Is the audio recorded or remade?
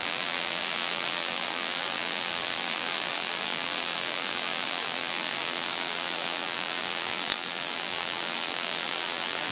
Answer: remade